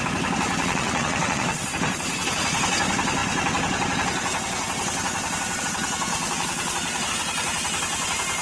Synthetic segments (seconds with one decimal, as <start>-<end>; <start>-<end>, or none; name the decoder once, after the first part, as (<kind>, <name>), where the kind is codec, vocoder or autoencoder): 0.6-1.6 (vocoder, Vocos); 6.1-7.1